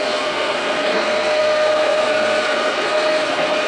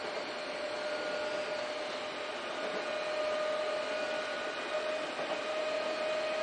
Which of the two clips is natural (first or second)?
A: second